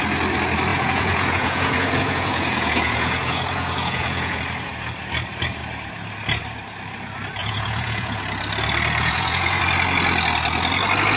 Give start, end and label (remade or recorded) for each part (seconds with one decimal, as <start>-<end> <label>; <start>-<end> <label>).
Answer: 0.0-0.7 recorded; 0.7-4.4 remade; 4.4-7.4 recorded; 7.4-8.2 remade; 8.2-9.0 recorded; 9.0-9.6 remade; 9.6-11.2 recorded

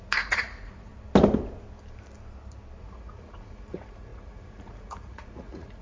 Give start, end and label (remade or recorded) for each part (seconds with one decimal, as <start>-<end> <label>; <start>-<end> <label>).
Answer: 0.0-0.9 remade; 0.9-2.8 recorded; 2.8-5.8 remade

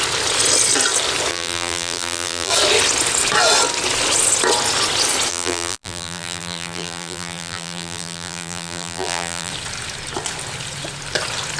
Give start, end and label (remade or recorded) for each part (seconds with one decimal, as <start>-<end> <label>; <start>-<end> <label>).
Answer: 0.0-1.3 recorded; 1.3-2.5 remade; 2.5-5.3 recorded; 5.3-9.5 remade; 9.5-11.6 recorded

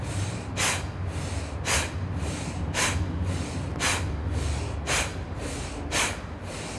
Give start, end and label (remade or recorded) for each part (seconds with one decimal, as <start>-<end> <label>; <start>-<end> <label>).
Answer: 0.0-5.1 recorded; 5.1-5.7 remade; 5.7-6.8 recorded

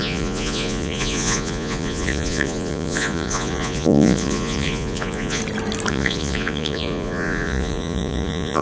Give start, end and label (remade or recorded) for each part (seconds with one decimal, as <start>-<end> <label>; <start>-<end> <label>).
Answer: 0.0-5.4 remade; 5.4-5.9 recorded; 5.9-8.6 remade

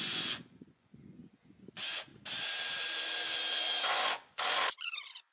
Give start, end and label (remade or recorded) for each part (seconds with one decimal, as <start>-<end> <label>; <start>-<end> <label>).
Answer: 0.0-2.1 remade; 2.1-3.8 recorded; 3.8-5.3 remade

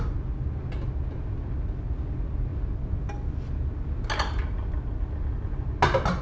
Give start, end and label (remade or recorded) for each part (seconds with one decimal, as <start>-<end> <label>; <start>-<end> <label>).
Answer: 0.0-6.2 recorded